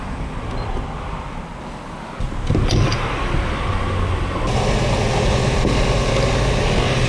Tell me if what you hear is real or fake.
real